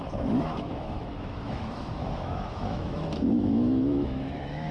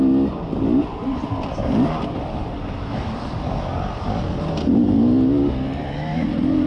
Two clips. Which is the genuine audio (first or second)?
second